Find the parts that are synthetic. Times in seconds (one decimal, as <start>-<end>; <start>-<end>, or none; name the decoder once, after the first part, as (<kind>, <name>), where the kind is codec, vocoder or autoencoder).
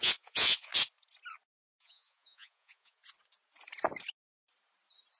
0.0-0.7 (vocoder, Vocos); 1.7-3.0